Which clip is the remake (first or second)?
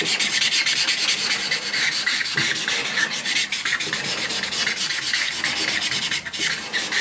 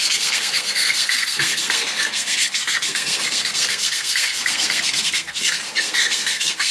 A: second